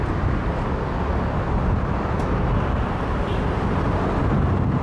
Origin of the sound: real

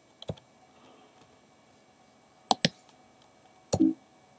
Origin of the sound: real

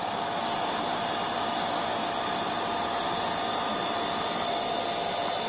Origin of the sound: real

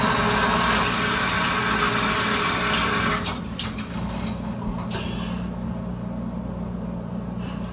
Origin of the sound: real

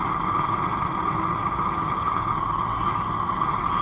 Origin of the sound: real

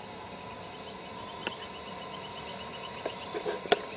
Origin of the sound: real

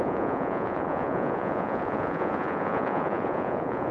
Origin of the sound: fake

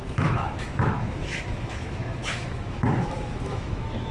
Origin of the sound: fake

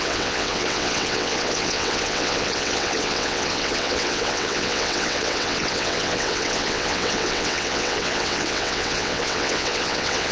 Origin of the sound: fake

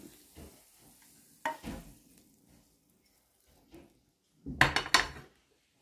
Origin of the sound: real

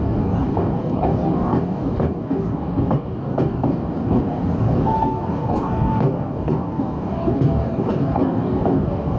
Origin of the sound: fake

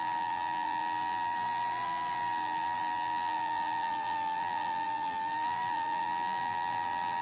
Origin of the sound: fake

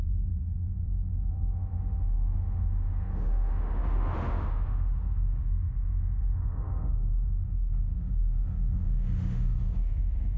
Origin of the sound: fake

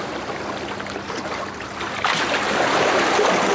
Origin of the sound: real